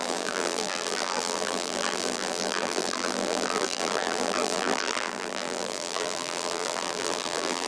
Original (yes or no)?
no